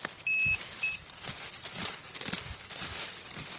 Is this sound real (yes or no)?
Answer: yes